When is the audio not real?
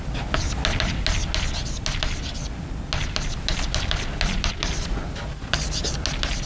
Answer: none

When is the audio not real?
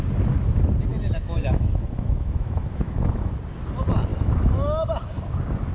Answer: 0.9-3.3 (autoencoder, DAC-VAE); 4.1-4.8